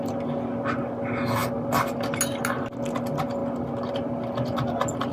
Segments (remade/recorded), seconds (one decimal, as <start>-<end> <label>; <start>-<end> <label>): 0.0-5.1 recorded